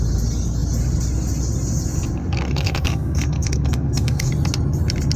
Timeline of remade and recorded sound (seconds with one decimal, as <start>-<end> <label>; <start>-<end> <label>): 0.0-2.2 recorded; 2.2-4.3 remade; 4.3-5.2 recorded

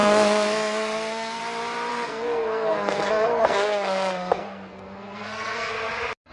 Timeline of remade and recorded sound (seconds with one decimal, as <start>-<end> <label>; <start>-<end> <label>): 0.0-1.4 remade; 1.4-1.9 recorded; 1.9-5.7 remade; 5.7-6.3 recorded

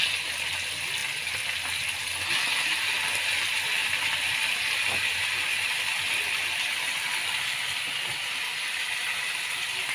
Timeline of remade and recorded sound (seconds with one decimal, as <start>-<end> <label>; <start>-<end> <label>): 0.0-9.9 recorded

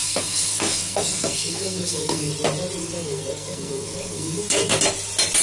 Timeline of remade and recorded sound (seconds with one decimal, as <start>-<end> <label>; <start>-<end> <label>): 0.0-2.3 remade; 2.3-2.8 recorded; 2.8-4.8 remade; 4.8-5.4 recorded